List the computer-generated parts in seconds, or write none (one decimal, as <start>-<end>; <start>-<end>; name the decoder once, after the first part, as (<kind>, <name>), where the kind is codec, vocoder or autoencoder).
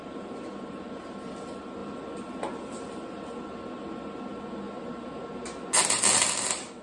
none